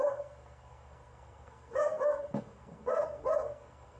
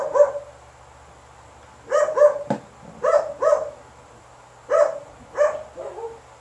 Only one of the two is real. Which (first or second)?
second